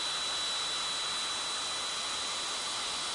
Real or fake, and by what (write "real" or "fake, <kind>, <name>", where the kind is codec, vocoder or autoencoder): real